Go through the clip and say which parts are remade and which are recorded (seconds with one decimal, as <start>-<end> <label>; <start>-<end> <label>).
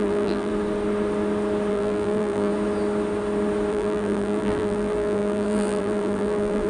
0.0-0.5 remade; 0.5-1.7 recorded; 1.7-2.5 remade; 2.5-3.7 recorded; 3.7-6.7 remade